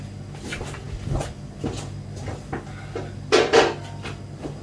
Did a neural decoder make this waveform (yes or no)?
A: no